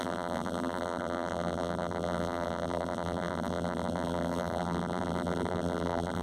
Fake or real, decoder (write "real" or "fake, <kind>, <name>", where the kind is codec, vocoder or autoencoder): fake, vocoder, BigVGAN v2